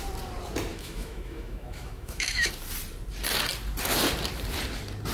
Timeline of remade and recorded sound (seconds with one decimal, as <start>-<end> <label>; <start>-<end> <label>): 0.0-0.7 recorded; 0.7-2.5 remade; 2.5-5.1 recorded